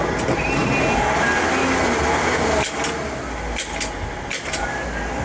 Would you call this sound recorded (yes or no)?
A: yes